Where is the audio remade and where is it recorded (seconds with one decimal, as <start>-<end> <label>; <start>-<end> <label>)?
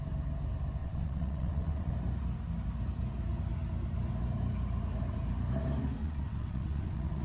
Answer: 0.0-0.8 recorded; 0.8-1.9 remade; 1.9-6.0 recorded; 6.0-7.2 remade